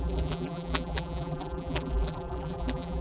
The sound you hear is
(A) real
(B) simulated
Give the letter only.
B